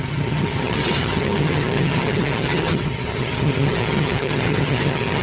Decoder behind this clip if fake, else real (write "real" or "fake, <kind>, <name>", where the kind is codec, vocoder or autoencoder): fake, vocoder, HiFi-GAN